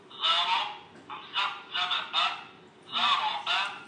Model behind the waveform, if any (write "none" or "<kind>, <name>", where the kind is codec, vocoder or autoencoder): none